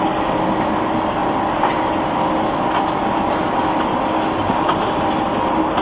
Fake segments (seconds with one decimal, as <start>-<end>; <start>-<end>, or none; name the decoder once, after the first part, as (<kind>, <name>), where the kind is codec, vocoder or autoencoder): none